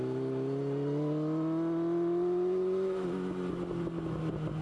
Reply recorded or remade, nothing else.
recorded